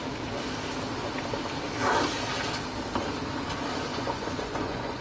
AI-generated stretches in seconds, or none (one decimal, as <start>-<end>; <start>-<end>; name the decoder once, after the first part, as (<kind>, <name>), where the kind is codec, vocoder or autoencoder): 3.9-5.0 (vocoder, Vocos)